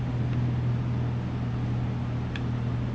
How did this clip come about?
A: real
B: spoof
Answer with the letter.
A